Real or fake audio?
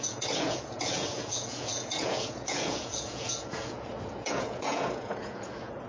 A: fake